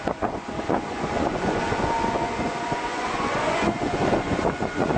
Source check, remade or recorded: remade